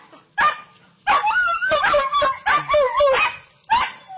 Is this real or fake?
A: real